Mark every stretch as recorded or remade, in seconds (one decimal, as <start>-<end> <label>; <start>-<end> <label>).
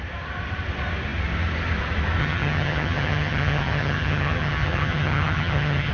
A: 0.0-2.2 recorded; 2.2-5.9 remade